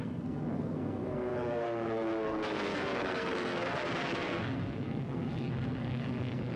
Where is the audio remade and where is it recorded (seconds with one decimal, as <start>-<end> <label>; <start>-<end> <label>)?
0.0-6.6 remade